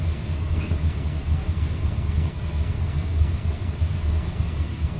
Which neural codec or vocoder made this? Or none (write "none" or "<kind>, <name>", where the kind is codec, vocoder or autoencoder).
codec, SNAC